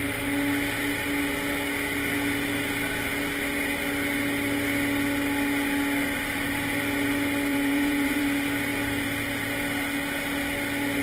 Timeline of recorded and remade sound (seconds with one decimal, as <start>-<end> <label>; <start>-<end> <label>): 0.0-7.5 recorded; 7.5-8.2 remade; 8.2-11.0 recorded